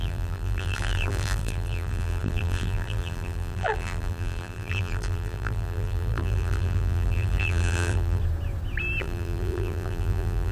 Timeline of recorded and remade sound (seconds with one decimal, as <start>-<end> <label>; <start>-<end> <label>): 0.0-8.2 remade; 8.2-9.0 recorded; 9.0-10.5 remade